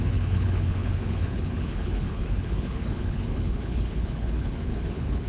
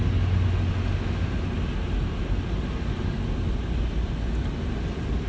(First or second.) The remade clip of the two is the first